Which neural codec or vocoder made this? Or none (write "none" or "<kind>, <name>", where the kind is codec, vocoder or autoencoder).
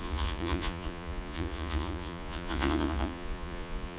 vocoder, Vocos